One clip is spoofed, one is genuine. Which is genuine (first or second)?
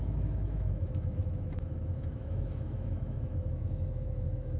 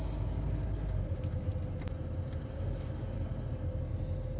second